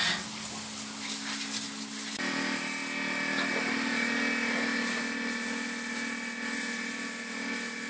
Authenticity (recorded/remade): recorded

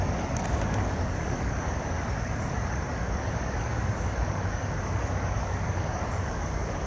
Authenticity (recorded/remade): remade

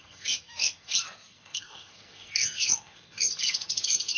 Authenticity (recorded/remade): remade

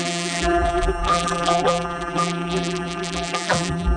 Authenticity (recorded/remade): remade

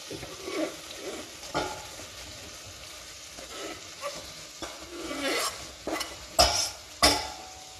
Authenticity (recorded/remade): recorded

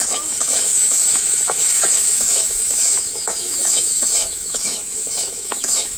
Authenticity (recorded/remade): remade